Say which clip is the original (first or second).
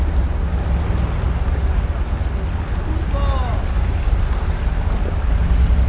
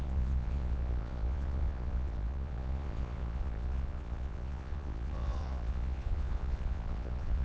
first